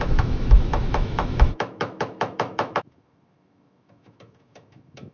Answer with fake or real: fake